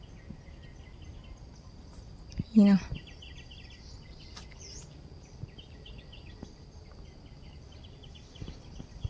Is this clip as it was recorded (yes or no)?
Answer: yes